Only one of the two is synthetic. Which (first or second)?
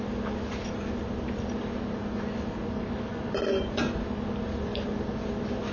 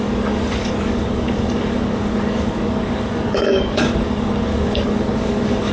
second